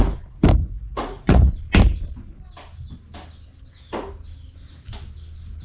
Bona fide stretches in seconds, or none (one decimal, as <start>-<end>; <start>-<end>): 0.0-0.6; 1.5-5.6